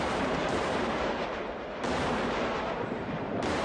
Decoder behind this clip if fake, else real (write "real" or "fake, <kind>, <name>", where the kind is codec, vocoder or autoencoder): fake, vocoder, BigVGAN v2